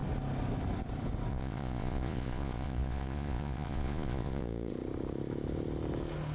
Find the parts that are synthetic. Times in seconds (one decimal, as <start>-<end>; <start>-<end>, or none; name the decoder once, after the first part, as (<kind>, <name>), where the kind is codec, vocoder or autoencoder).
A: 1.3-4.7 (vocoder, Vocos)